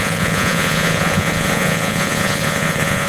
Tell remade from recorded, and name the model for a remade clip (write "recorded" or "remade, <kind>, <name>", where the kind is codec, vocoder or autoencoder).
remade, vocoder, Vocos